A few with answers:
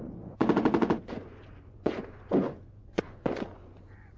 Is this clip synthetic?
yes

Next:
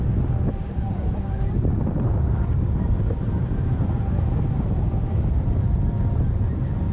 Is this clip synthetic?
no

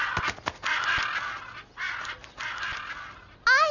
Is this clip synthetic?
no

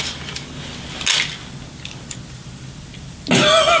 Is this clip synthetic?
no